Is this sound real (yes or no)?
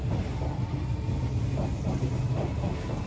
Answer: yes